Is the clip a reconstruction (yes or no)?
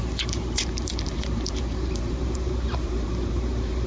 yes